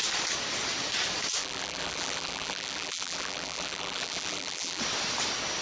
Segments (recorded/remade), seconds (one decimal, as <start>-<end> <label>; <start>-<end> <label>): 0.0-1.4 recorded; 1.4-4.8 remade; 4.8-5.6 recorded